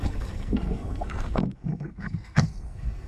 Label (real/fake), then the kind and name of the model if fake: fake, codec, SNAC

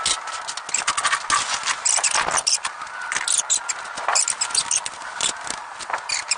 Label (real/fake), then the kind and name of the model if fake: real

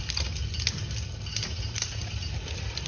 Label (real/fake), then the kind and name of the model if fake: real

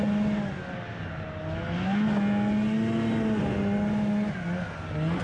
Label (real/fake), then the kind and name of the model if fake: real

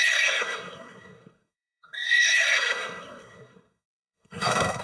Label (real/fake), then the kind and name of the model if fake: fake, codec, SNAC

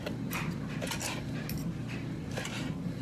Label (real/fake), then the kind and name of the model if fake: real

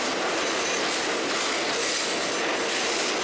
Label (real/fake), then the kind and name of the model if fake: real